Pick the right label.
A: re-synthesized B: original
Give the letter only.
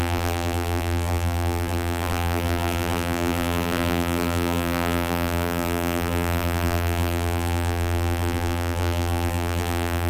A